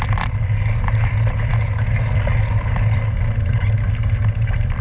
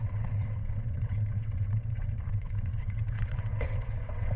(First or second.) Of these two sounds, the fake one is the second